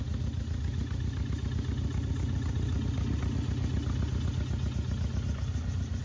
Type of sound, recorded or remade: recorded